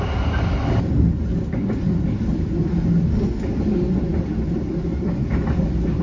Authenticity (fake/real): real